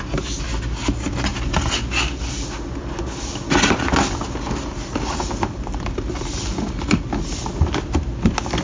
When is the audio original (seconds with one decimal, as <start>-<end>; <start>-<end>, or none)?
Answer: 0.0-8.6